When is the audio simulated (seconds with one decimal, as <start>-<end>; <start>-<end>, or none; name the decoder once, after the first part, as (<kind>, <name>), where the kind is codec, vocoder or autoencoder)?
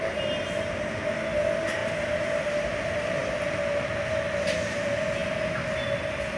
none